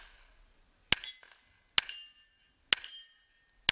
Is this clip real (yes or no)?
yes